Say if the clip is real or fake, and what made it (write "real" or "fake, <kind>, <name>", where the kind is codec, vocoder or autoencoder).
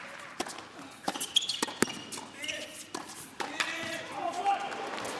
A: real